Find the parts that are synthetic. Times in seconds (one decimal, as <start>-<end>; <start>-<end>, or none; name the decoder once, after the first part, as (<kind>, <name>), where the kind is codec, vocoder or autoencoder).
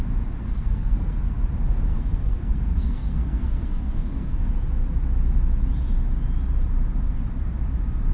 0.4-1.4 (codec, SNAC); 1.9-4.5